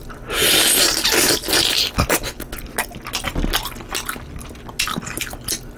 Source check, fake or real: real